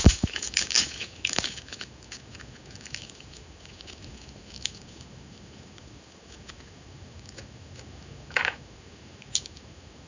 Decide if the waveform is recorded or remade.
remade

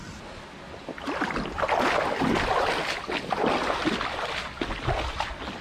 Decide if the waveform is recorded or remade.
recorded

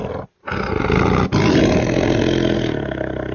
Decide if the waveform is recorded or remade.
recorded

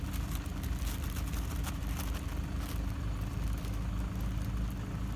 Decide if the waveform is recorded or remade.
recorded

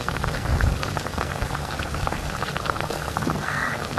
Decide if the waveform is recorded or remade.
remade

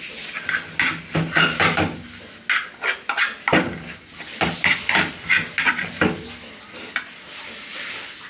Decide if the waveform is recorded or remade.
recorded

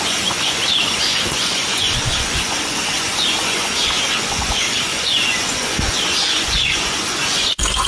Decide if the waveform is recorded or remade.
remade